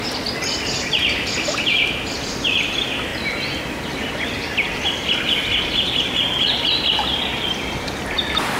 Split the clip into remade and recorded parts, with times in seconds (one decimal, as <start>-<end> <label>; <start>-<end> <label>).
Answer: 0.0-8.6 recorded